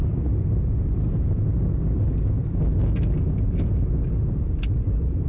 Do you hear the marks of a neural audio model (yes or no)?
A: no